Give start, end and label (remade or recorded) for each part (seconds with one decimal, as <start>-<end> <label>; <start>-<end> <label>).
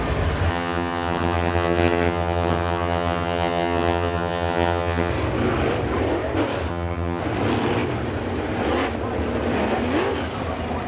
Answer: 0.0-0.5 recorded; 0.5-5.1 remade; 5.1-6.7 recorded; 6.7-7.2 remade; 7.2-10.9 recorded